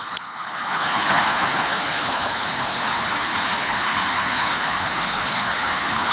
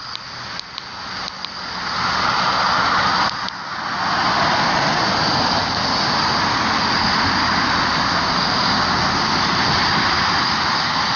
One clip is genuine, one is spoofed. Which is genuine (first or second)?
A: second